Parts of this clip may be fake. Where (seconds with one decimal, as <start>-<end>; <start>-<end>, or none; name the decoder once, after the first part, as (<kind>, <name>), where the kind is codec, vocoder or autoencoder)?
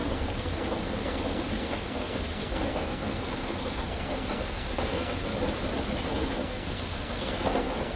0.0-5.3 (codec, SNAC); 6.0-8.0